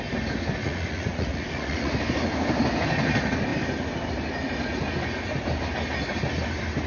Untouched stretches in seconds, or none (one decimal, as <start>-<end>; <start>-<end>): 0.0-0.6; 1.9-6.9